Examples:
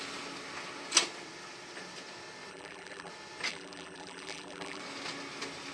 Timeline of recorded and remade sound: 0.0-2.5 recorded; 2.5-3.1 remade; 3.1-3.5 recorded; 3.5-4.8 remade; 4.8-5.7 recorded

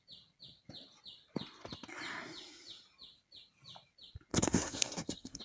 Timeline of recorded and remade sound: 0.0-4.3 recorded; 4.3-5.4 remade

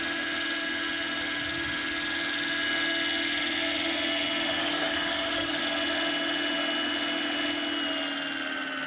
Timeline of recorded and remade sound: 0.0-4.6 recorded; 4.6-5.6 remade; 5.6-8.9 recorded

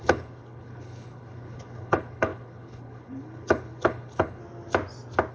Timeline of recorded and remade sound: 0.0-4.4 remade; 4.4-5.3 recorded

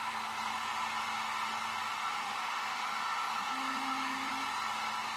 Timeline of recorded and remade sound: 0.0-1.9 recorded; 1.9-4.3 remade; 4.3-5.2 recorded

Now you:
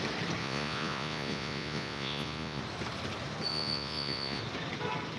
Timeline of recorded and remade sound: 0.0-0.4 recorded; 0.4-2.6 remade; 2.6-3.5 recorded; 3.5-4.4 remade; 4.4-5.2 recorded

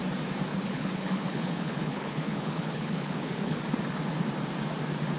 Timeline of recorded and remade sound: 0.0-0.5 recorded; 0.5-3.6 remade; 3.6-5.2 recorded